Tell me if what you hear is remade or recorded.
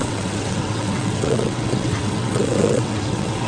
remade